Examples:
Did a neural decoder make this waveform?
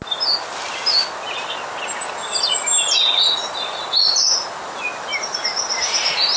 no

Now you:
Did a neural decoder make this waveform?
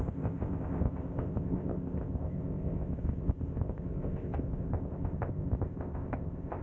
yes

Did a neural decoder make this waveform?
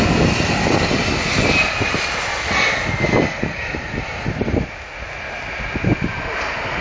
no